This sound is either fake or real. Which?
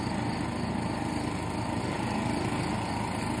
real